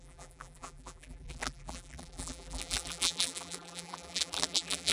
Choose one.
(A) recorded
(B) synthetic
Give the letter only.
B